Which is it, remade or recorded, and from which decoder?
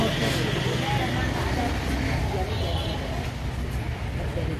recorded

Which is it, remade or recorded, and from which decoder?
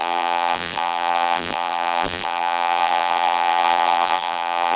remade, vocoder, BigVGAN v2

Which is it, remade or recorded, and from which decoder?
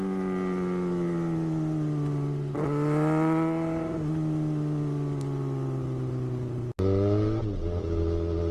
recorded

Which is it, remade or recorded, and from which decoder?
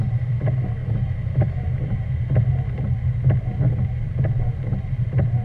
recorded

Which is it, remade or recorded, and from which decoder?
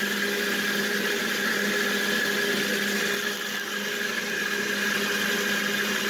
recorded